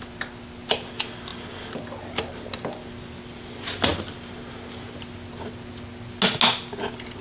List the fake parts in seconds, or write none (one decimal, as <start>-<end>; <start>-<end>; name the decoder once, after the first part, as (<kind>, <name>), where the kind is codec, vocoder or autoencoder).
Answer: none